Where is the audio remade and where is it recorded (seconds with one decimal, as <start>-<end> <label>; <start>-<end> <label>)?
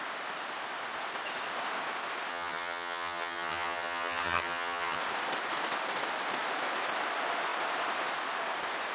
0.0-2.3 recorded; 2.3-5.0 remade; 5.0-8.9 recorded